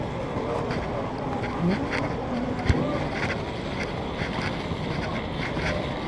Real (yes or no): yes